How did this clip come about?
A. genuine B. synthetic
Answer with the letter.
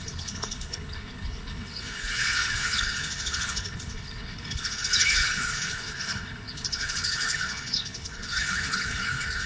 B